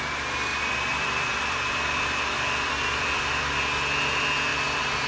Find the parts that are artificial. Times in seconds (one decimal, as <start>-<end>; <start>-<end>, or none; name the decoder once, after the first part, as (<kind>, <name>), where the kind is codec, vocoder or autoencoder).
0.5-3.6 (vocoder, BigVGAN v2); 4.5-5.1